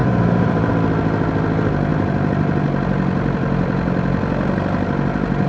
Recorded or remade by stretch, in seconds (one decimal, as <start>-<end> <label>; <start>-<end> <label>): 0.0-0.7 remade; 0.7-5.5 recorded